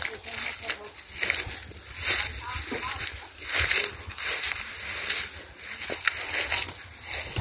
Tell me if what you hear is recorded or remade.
recorded